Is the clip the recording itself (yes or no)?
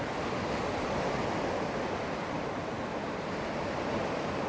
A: no